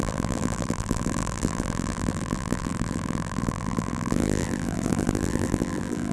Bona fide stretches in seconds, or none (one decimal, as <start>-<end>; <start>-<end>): none